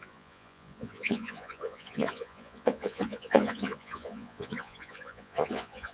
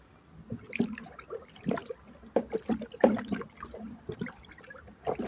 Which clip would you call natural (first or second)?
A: second